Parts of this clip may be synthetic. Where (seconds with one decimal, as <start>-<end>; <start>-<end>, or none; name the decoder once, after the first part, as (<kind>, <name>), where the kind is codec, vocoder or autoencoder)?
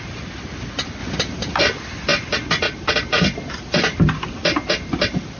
1.0-1.6 (vocoder, BigVGAN v2); 2.1-5.4